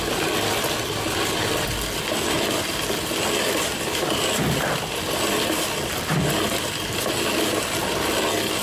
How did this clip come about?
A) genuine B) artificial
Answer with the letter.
A